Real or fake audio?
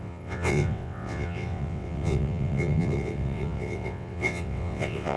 fake